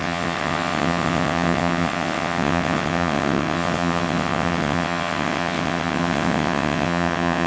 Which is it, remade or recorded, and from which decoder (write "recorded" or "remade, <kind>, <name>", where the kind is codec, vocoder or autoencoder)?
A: remade, vocoder, WaveNeXt